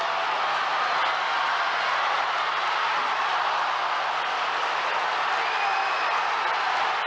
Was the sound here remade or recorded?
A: recorded